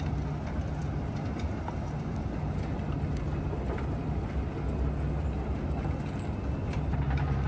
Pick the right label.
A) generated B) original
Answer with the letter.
B